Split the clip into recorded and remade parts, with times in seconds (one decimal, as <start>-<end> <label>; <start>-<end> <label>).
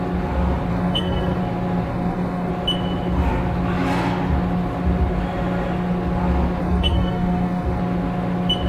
0.0-0.7 recorded; 0.7-1.4 remade; 1.4-1.9 recorded; 1.9-2.5 remade; 2.5-6.6 recorded; 6.6-7.8 remade; 7.8-8.7 recorded